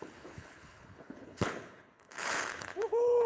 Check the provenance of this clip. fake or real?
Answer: fake